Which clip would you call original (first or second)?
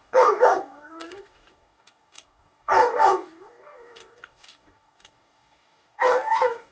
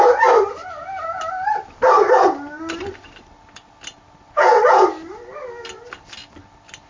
second